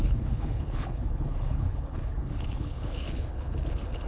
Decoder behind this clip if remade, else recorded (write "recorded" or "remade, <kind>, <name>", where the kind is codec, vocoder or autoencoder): remade, codec, HILCodec